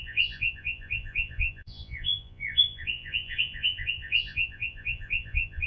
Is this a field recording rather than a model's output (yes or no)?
no